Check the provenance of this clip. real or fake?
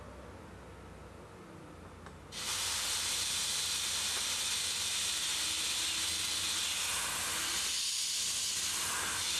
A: real